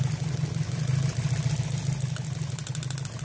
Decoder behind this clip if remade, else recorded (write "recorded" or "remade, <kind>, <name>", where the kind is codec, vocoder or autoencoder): recorded